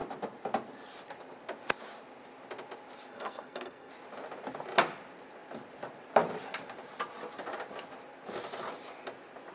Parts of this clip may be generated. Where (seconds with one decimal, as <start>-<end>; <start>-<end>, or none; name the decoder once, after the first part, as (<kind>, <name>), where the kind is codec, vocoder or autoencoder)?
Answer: 3.1-3.9 (codec, SNAC)